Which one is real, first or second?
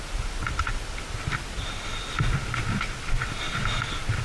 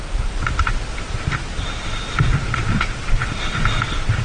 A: first